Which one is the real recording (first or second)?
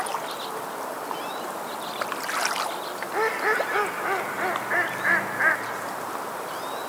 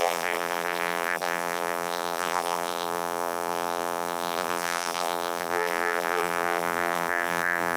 first